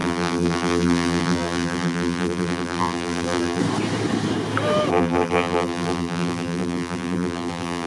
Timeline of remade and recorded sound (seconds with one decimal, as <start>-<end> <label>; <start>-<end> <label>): 0.0-3.6 remade; 3.6-4.9 recorded; 4.9-7.9 remade